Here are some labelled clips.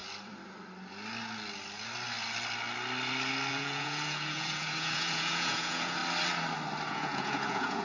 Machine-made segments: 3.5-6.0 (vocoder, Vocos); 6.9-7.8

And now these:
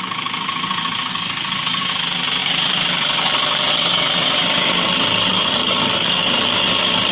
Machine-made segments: 1.1-1.9 (codec, DAC); 5.3-6.3

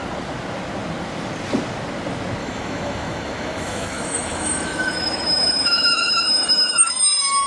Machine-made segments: 2.4-6.9 (autoencoder, DAC-VAE)

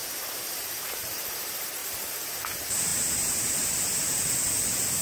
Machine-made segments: 0.0-1.1 (vocoder, BigVGAN v2); 1.8-2.3

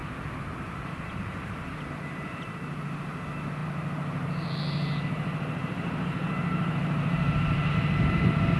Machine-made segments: 0.0-3.0 (vocoder, BigVGAN v2); 3.6-7.7

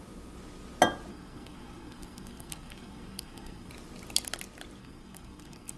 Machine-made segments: 1.1-3.7 (codec, SNAC); 4.8-5.8

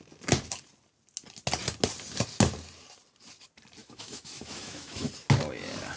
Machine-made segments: 3.8-5.1 (autoencoder, DAC-VAE)

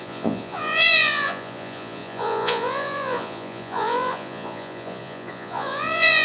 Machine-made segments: 0.0-6.2 (vocoder, Vocos)